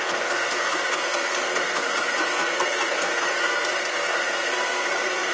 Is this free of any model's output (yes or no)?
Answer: no